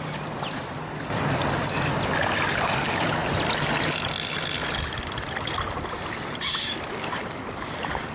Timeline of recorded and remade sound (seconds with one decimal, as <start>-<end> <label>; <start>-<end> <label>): 0.0-8.1 recorded